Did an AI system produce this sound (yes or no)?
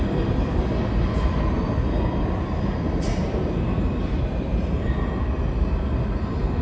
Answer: no